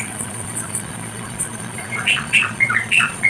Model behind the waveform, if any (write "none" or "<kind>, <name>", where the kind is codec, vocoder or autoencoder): vocoder, Vocos